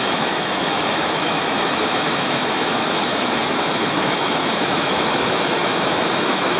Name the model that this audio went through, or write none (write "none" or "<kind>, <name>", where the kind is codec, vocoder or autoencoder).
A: autoencoder, DAC-VAE